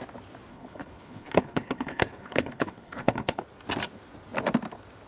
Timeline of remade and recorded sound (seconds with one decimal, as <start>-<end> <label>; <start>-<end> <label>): 0.0-0.5 recorded; 0.5-3.4 remade; 3.4-5.1 recorded